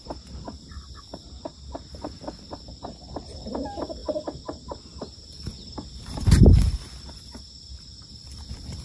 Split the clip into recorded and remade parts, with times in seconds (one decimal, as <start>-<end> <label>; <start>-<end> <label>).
0.0-8.8 recorded